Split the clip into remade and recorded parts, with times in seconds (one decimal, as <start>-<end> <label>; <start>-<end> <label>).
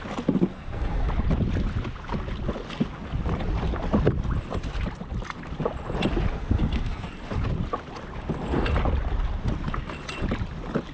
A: 0.0-0.5 recorded; 0.5-1.1 remade; 1.1-6.3 recorded; 6.3-7.1 remade; 7.1-10.9 recorded